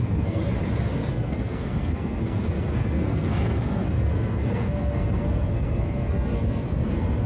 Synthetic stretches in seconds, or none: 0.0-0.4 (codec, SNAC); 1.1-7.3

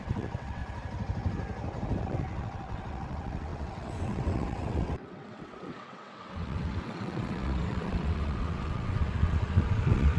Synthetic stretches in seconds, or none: 0.0-0.6 (vocoder, WaveNeXt); 2.0-10.2

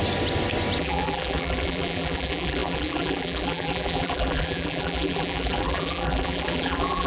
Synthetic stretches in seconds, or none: 0.8-7.1 (vocoder, BigVGAN v2)